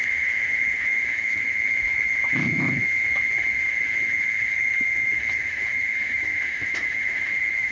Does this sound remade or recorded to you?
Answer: remade